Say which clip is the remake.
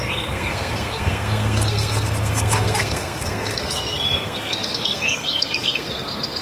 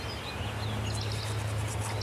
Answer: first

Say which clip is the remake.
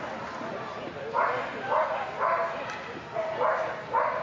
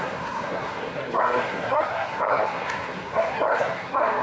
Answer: second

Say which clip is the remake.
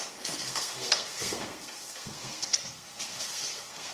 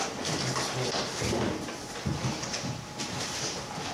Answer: first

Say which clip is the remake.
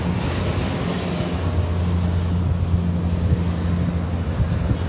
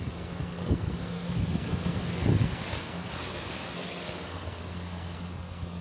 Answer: second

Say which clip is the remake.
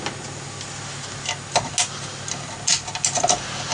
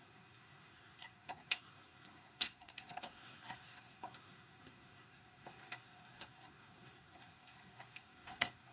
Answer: second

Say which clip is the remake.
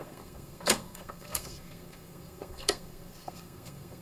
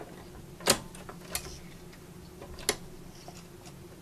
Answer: first